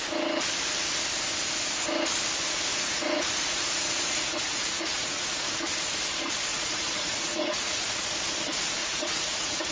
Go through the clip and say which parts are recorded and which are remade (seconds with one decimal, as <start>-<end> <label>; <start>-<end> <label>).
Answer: 0.0-2.7 recorded; 2.7-5.5 remade; 5.5-6.5 recorded; 6.5-7.7 remade; 7.7-8.8 recorded; 8.8-9.7 remade